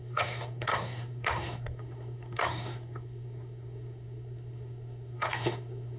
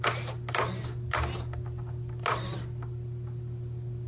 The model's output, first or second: first